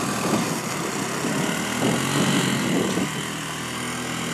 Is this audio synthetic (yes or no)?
no